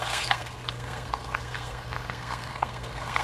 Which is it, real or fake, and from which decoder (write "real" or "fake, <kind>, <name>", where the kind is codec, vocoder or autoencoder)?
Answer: fake, codec, SNAC